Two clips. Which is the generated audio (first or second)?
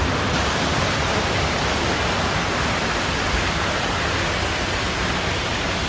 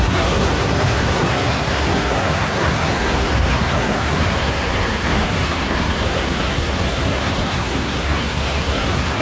second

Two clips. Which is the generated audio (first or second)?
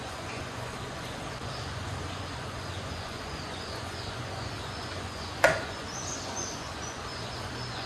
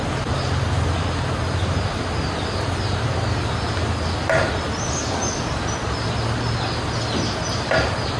first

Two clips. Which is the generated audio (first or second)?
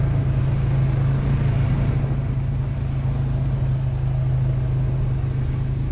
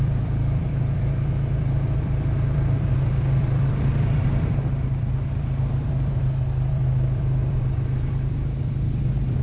second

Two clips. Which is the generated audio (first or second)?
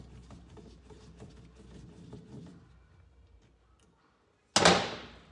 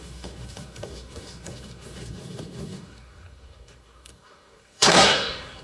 second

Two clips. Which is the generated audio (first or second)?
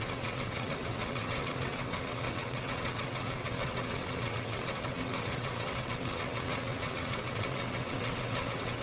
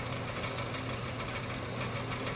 first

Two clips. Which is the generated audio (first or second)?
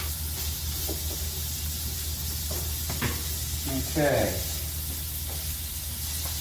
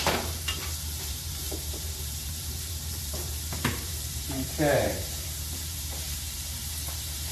second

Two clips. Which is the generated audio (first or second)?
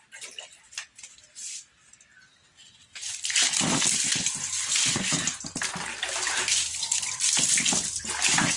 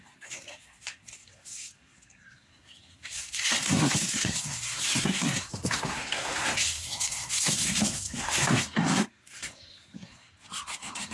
second